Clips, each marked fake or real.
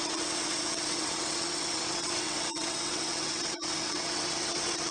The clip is fake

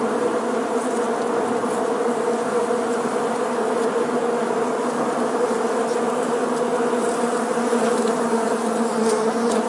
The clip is real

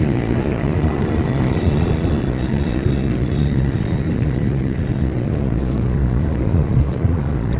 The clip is fake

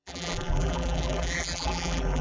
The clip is fake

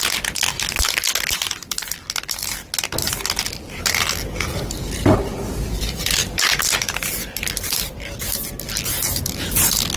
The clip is real